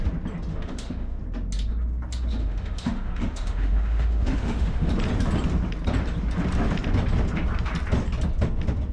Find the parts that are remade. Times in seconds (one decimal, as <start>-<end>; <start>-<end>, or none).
0.5-1.2; 2.4-4.9